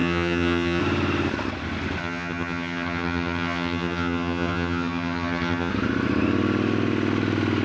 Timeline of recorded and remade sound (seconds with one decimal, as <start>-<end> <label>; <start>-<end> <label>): 0.0-0.8 remade; 0.8-2.0 recorded; 2.0-5.7 remade; 5.7-7.6 recorded